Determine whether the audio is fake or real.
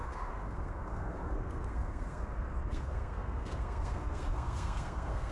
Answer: fake